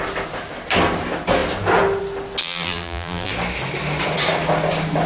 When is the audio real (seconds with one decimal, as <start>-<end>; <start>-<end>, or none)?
0.0-2.4; 3.3-5.1